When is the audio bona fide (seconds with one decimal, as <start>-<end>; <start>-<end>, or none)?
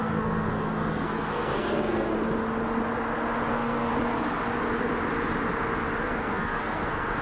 2.1-3.5; 3.9-6.0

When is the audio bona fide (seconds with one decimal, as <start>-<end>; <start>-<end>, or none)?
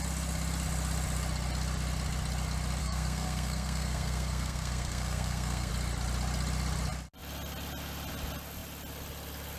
0.0-2.8; 5.7-9.6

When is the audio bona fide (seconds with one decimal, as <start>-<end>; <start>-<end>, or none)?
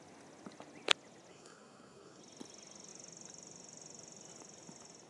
0.0-1.3; 2.2-5.1